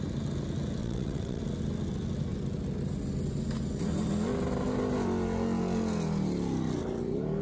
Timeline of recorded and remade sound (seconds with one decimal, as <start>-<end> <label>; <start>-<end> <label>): 0.0-0.8 recorded; 0.8-1.4 remade; 1.4-7.4 recorded